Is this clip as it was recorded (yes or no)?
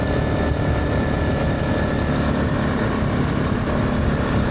yes